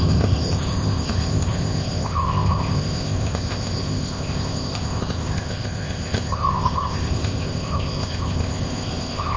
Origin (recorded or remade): remade